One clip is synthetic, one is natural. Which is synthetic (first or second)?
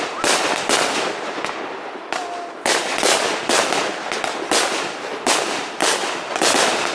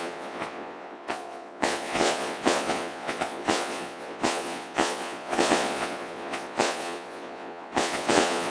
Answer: second